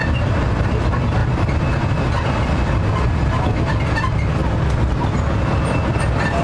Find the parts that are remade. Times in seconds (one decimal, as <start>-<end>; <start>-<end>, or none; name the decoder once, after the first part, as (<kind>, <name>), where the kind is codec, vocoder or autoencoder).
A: none